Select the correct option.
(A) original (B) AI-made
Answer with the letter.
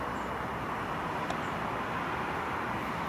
A